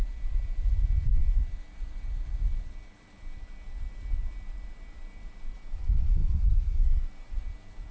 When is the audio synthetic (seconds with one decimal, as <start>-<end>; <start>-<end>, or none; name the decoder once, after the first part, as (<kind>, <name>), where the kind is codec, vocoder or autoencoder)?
none

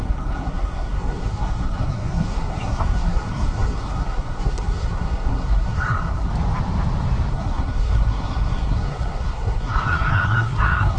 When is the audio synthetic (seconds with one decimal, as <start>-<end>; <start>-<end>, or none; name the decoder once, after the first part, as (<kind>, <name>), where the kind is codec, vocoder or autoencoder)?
0.0-6.3 (codec, SNAC); 7.3-11.0